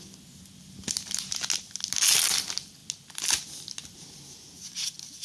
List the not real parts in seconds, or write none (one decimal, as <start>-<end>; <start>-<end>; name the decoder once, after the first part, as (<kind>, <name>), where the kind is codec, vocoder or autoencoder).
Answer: none